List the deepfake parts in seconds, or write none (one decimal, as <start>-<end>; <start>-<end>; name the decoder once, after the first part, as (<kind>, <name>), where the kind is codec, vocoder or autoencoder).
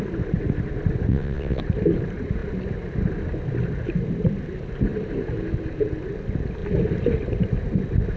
1.1-1.6 (vocoder, WaveNeXt)